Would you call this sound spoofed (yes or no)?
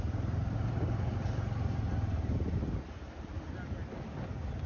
no